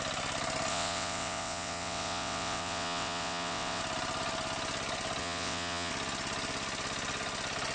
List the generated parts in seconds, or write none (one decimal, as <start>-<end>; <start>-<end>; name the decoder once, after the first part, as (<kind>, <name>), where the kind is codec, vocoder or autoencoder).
0.7-3.8 (vocoder, WaveNeXt); 5.2-5.9